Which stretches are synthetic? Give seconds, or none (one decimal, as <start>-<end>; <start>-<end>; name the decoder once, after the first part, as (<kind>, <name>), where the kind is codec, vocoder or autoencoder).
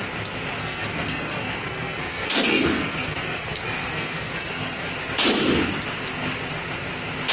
0.6-4.9 (codec, SNAC)